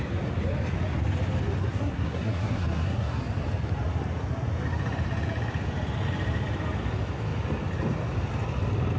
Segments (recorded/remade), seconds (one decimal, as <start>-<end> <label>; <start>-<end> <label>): 0.0-1.7 recorded; 1.7-3.2 remade; 3.2-9.0 recorded